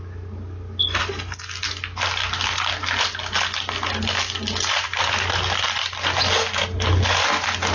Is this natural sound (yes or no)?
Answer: yes